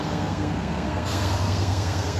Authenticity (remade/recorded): remade